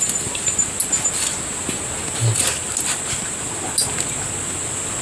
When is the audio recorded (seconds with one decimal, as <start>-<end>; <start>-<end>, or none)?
0.0-5.0